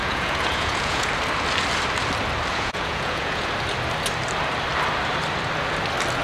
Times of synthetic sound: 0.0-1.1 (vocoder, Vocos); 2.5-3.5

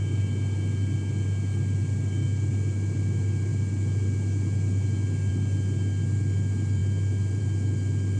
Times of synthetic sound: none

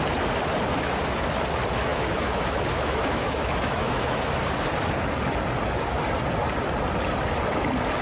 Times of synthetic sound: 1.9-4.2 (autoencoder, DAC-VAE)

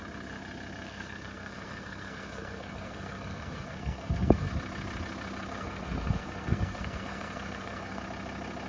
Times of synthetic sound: 0.9-4.5 (codec, SNAC); 5.5-8.0

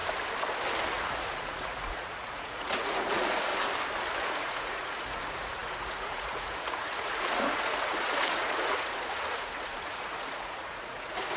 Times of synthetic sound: 0.9-3.5 (vocoder, Vocos); 4.2-11.4

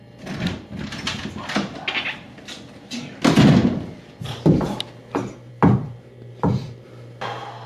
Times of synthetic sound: none